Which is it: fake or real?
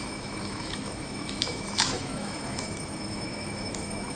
fake